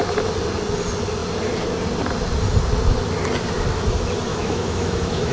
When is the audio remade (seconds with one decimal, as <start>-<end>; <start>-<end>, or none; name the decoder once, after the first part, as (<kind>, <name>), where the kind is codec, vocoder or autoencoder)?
4.3-5.3 (autoencoder, DAC-VAE)